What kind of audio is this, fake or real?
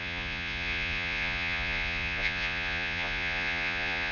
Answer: fake